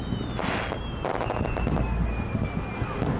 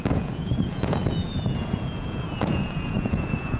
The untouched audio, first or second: first